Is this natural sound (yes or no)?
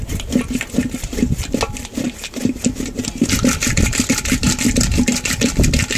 no